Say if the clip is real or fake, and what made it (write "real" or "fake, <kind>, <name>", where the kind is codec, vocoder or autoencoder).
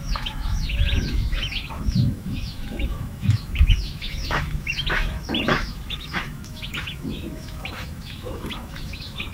fake, autoencoder, DAC-VAE